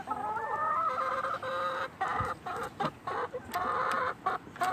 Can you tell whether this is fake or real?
real